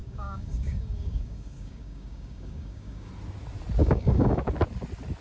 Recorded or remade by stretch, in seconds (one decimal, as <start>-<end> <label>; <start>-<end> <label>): 0.0-3.1 remade; 3.1-3.8 recorded; 3.8-4.4 remade; 4.4-5.2 recorded